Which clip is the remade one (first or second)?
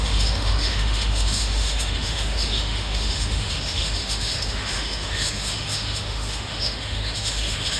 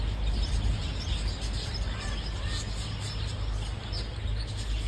first